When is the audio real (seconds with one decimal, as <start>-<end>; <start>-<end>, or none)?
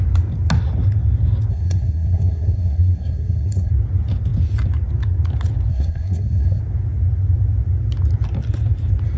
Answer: 0.0-1.5; 3.7-5.7; 6.6-9.2